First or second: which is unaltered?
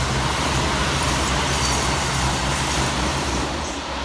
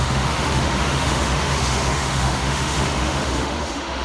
first